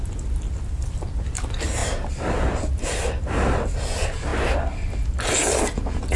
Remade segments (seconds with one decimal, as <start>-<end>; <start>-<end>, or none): 0.0-1.8; 3.2-4.3

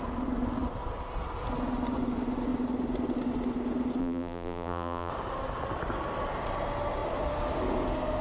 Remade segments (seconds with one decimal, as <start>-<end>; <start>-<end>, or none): 4.0-5.1

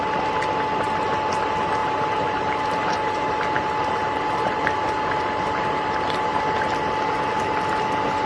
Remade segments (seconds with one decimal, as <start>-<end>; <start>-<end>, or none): 1.8-6.4

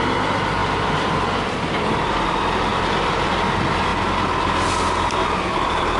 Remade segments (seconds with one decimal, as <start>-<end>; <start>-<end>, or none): 0.0-3.9; 4.7-6.0

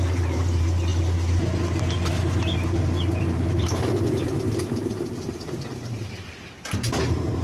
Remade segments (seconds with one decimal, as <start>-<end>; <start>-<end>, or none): 0.0-0.9; 3.2-3.9; 4.6-7.4

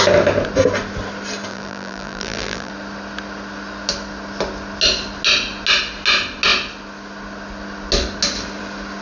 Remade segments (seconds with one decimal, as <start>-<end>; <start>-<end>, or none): 1.5-2.7